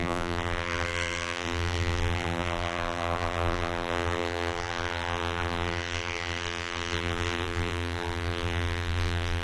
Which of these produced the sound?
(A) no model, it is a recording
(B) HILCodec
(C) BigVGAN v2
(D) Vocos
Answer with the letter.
C